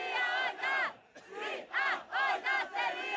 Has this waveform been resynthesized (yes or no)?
no